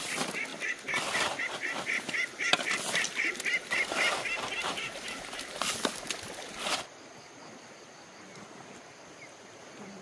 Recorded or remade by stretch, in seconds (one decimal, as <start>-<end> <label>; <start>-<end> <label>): 0.0-10.0 recorded